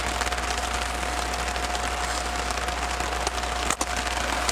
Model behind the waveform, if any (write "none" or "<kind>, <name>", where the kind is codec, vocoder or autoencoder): vocoder, BigVGAN v2